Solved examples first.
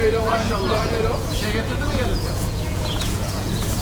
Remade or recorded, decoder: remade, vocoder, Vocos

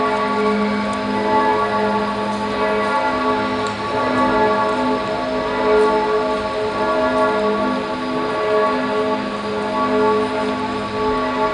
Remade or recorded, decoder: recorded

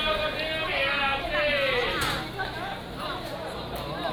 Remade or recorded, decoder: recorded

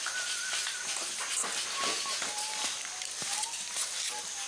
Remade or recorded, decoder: recorded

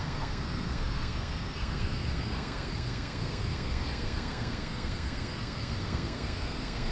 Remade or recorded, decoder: remade, codec, SNAC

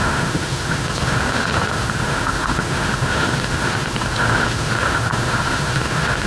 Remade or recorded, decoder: remade, autoencoder, DAC-VAE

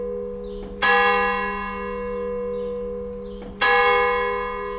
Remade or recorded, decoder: recorded